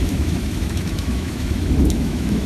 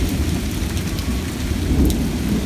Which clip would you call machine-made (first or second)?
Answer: first